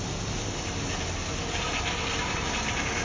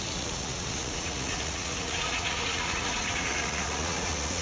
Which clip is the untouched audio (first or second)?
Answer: first